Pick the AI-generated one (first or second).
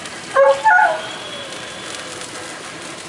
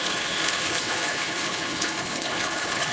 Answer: second